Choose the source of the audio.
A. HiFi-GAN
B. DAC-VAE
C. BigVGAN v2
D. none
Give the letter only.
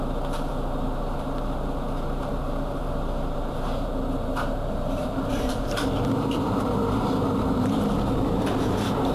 C